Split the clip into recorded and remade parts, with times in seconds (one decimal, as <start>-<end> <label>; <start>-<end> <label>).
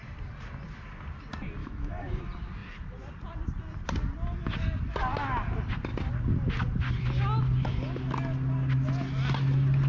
0.0-1.6 recorded; 1.6-2.2 remade; 2.2-9.9 recorded